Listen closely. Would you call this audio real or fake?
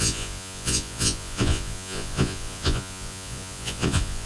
fake